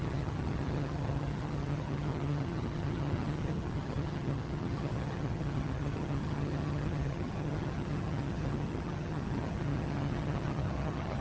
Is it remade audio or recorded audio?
remade